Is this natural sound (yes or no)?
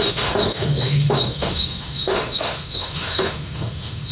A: no